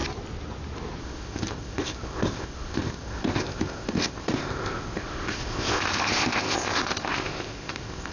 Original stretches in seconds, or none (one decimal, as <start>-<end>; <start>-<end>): 0.0-1.0